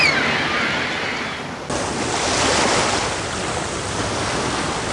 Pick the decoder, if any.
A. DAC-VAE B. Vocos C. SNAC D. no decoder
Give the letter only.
D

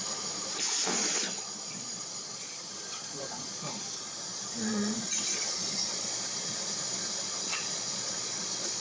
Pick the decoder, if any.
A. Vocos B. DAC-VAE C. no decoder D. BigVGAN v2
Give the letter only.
A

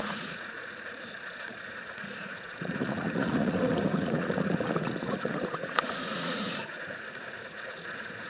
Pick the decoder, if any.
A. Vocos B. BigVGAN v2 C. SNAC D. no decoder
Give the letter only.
A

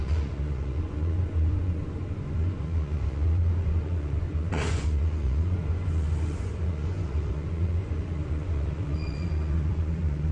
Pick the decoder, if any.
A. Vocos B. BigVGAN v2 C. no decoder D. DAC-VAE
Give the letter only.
A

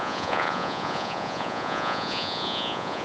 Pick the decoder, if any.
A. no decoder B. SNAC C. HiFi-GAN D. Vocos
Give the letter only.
D